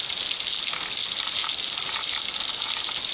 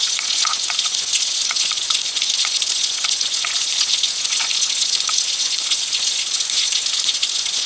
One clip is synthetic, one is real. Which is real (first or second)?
first